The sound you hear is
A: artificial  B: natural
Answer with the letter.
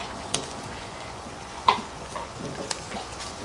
A